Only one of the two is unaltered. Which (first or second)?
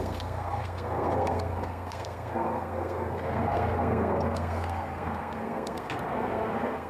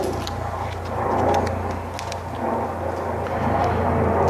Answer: second